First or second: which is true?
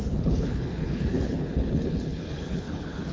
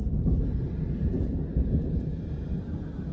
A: second